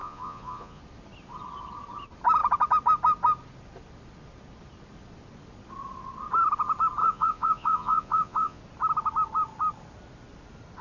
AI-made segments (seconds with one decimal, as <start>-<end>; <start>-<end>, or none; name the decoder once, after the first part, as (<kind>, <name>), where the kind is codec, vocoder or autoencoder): 0.0-0.8 (vocoder, Vocos); 7.0-8.6